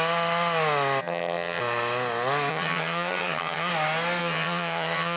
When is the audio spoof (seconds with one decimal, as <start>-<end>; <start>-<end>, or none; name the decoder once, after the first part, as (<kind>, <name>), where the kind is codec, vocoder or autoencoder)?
1.0-1.6 (vocoder, HiFi-GAN); 2.5-3.7; 4.2-5.2